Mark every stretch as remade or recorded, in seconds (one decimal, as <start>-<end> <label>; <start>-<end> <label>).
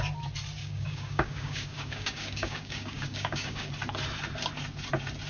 0.0-0.6 recorded; 0.6-3.7 remade; 3.7-5.3 recorded